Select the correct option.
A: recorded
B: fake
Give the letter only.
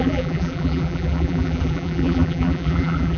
B